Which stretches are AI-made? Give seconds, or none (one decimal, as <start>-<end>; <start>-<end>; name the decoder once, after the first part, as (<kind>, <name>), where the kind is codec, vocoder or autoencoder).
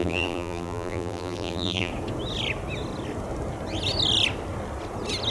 0.0-1.9 (vocoder, BigVGAN v2)